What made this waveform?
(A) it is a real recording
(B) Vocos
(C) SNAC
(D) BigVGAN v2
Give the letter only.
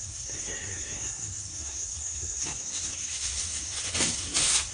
C